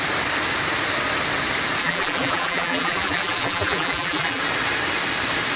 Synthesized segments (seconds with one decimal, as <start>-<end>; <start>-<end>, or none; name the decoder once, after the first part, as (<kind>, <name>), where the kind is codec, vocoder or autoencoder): 1.8-4.4 (vocoder, BigVGAN v2)